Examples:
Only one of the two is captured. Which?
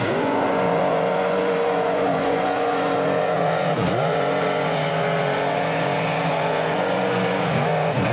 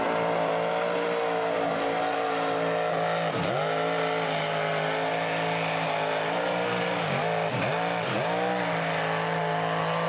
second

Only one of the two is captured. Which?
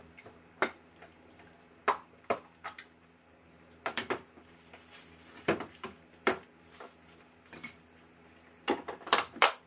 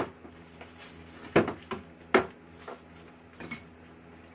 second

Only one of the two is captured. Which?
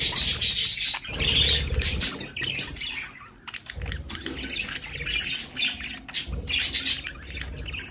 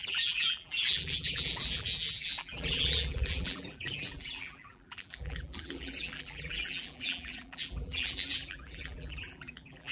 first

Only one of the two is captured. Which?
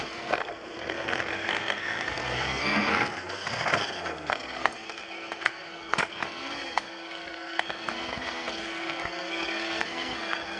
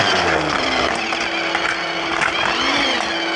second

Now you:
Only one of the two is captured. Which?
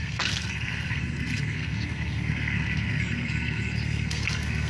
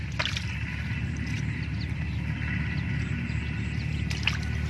second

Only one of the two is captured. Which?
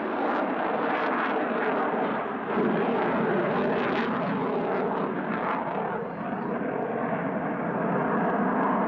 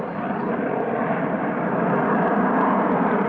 first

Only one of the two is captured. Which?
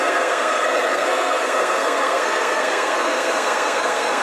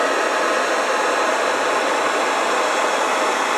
second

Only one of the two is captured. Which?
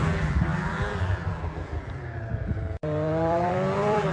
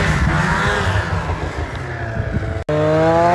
second